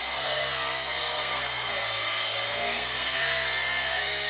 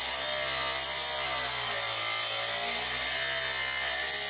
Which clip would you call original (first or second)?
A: second